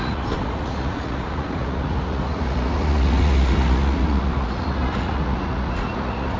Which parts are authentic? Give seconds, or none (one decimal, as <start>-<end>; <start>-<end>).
none